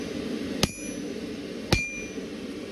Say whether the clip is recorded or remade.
recorded